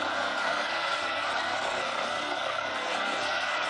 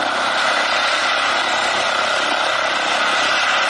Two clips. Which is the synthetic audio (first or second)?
first